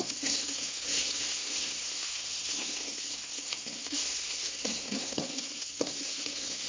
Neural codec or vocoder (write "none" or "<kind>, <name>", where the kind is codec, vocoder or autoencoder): codec, SNAC